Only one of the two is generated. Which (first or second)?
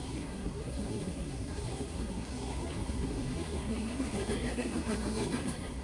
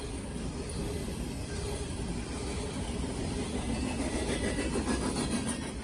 first